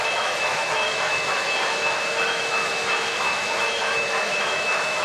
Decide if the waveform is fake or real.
fake